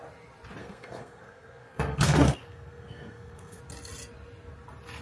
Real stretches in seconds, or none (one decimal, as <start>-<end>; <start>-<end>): 0.0-0.6; 3.6-5.0